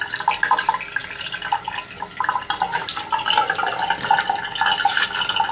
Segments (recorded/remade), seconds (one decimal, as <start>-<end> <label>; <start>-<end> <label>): 0.0-5.5 recorded